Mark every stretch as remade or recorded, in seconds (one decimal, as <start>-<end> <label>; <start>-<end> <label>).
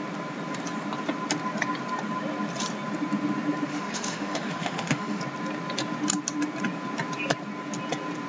0.0-3.7 recorded; 3.7-5.2 remade; 5.2-8.3 recorded